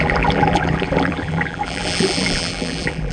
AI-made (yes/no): yes